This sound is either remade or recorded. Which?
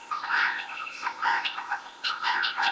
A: remade